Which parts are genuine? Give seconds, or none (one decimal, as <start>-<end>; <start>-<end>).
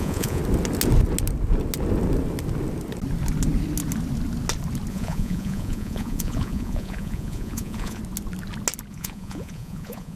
0.4-4.9; 8.0-8.9